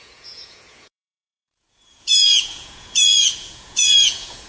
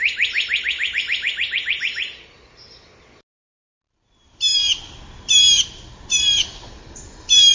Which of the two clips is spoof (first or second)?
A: first